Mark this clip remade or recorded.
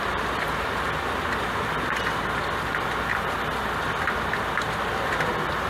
recorded